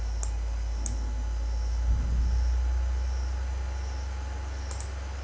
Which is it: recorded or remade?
recorded